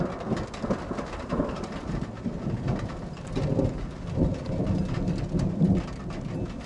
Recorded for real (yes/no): yes